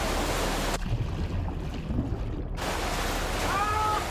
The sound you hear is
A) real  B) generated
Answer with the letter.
A